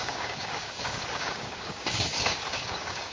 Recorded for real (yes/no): no